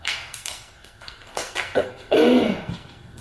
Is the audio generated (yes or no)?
yes